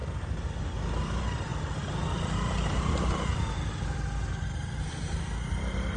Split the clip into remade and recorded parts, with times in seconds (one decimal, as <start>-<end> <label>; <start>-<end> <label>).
0.0-6.0 recorded